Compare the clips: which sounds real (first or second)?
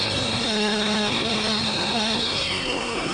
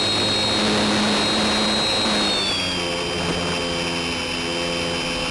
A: second